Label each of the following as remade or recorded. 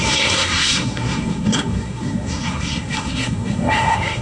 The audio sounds remade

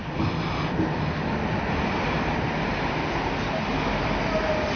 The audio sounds recorded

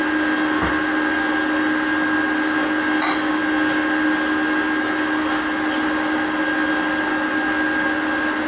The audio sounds recorded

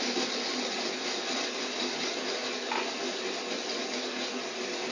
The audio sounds recorded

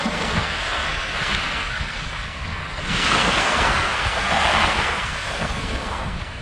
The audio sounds remade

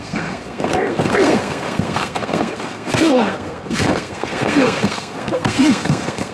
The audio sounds remade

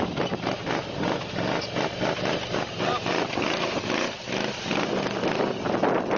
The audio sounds recorded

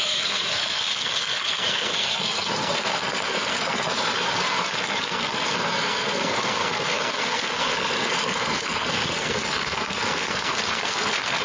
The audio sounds remade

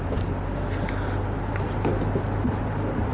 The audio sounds recorded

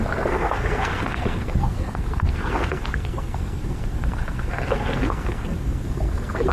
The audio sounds remade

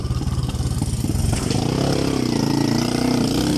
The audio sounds recorded